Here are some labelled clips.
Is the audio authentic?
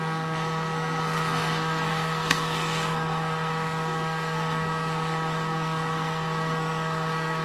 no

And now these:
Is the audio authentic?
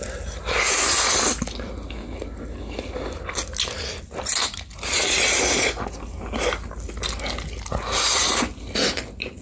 yes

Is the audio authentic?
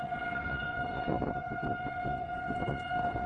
no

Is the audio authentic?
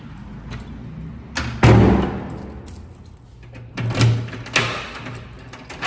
yes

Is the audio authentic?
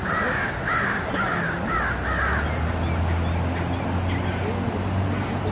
yes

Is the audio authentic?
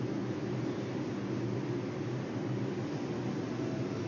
yes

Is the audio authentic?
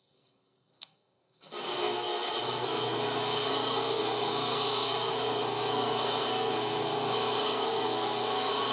no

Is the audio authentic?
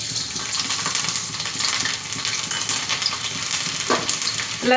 no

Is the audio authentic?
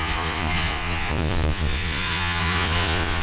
no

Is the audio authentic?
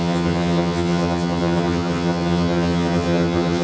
no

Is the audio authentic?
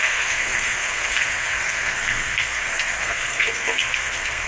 no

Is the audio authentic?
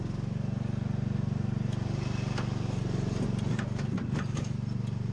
yes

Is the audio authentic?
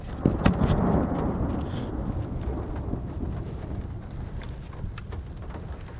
yes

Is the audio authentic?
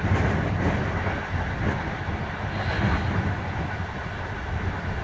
yes